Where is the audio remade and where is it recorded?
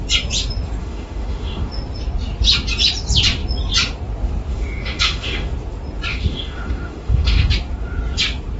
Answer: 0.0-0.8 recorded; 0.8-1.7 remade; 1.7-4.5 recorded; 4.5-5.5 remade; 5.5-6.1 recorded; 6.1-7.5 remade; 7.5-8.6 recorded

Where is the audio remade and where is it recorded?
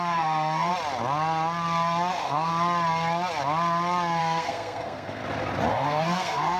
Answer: 0.0-0.7 remade; 0.7-2.1 recorded; 2.1-2.5 remade; 2.5-4.2 recorded; 4.2-5.2 remade; 5.2-5.7 recorded; 5.7-6.6 remade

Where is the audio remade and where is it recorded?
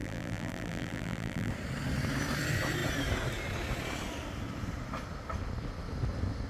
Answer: 0.0-1.5 remade; 1.5-6.5 recorded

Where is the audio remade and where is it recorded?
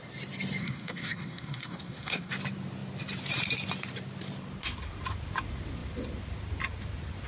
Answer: 0.0-0.6 recorded; 0.6-2.3 remade; 2.3-7.3 recorded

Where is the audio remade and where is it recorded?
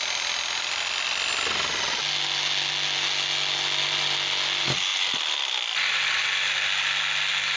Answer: 0.0-4.9 recorded; 4.9-5.8 remade; 5.8-7.6 recorded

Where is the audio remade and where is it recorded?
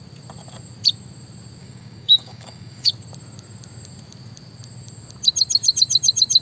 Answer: 0.0-1.6 recorded; 1.6-2.9 remade; 2.9-6.4 recorded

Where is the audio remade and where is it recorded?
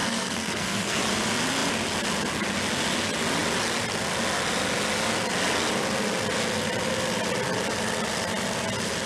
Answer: 0.0-1.0 remade; 1.0-9.1 recorded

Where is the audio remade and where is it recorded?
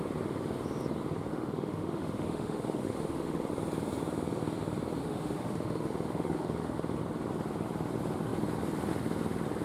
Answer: 0.0-1.3 recorded; 1.3-3.5 remade; 3.5-5.0 recorded; 5.0-7.0 remade; 7.0-9.6 recorded